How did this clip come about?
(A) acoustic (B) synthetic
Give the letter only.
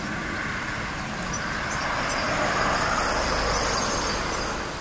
A